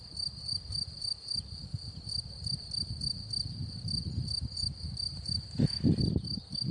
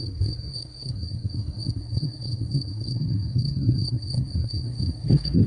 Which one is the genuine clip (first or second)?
first